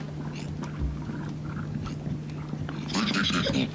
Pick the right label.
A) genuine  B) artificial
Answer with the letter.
A